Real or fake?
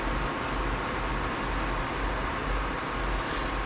real